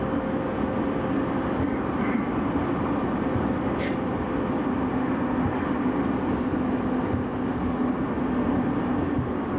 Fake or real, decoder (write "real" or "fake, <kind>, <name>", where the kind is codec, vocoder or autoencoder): real